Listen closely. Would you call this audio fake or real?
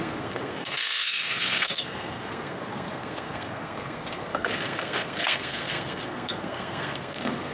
fake